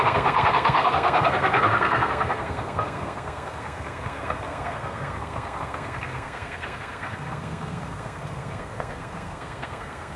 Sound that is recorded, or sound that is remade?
remade